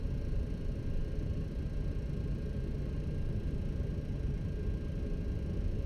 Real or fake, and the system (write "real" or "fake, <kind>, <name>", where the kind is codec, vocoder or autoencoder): fake, vocoder, BigVGAN v2